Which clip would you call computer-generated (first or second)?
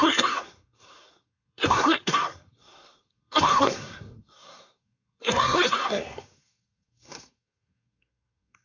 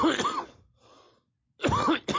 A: first